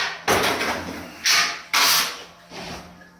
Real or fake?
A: real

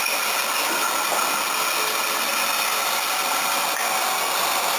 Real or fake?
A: real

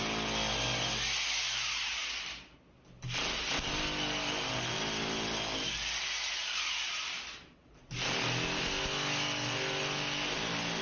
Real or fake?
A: real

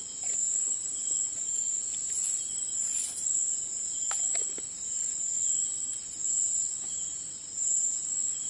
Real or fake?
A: real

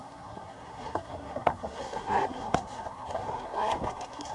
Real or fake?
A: fake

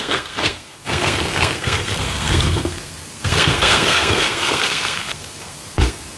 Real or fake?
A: fake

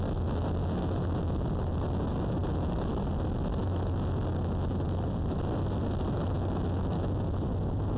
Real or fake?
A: real